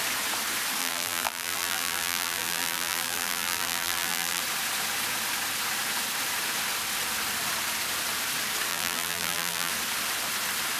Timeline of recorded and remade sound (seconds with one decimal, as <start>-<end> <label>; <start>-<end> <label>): 0.0-0.8 recorded; 0.8-4.4 remade; 4.4-8.7 recorded; 8.7-9.7 remade; 9.7-10.8 recorded